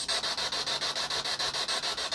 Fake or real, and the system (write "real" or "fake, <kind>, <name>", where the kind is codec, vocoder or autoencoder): real